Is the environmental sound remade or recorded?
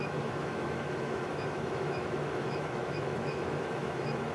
remade